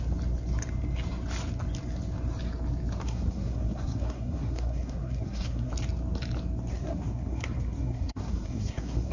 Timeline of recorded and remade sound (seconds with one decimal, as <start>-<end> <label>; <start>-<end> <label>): 0.0-3.0 recorded; 3.0-5.7 remade; 5.7-6.7 recorded; 6.7-9.1 remade